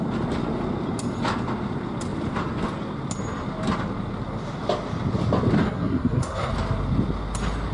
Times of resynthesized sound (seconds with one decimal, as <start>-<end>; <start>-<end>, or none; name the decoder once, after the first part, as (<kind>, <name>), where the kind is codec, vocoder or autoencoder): 5.6-6.5 (codec, SNAC)

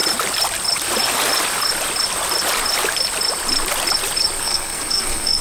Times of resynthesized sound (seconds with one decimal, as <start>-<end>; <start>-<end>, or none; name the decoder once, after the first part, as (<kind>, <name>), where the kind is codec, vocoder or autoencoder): 4.4-5.4 (codec, SNAC)

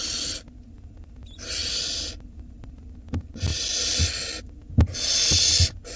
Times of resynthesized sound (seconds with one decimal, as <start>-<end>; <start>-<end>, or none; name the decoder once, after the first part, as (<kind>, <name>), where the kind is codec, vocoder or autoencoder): none

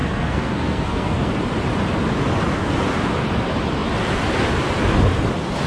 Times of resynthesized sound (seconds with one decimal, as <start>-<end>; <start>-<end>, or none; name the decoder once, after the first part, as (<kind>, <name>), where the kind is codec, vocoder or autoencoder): 0.0-1.3 (codec, SNAC)